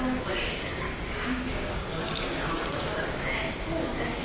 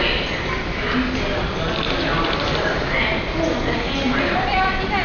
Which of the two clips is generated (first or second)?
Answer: first